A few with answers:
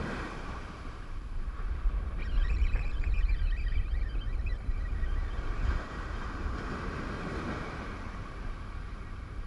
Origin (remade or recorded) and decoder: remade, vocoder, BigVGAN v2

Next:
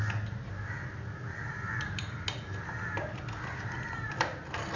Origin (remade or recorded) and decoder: recorded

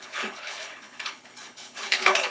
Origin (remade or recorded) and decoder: remade, codec, HILCodec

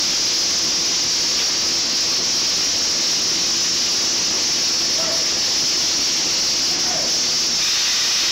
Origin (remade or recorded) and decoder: recorded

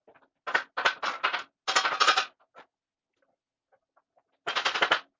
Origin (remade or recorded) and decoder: recorded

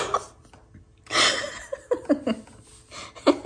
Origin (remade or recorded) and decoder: recorded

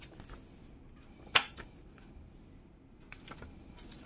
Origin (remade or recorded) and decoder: recorded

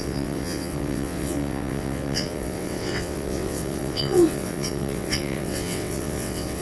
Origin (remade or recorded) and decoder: remade, vocoder, WaveNeXt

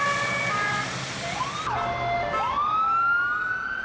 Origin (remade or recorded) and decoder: recorded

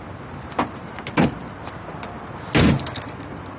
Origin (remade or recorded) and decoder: recorded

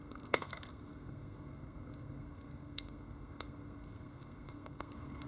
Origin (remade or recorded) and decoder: remade, codec, SNAC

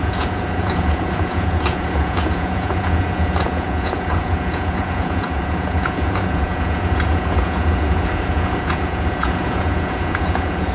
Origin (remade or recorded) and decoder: remade, vocoder, Vocos